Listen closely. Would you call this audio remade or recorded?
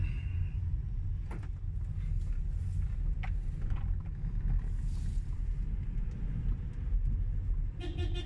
recorded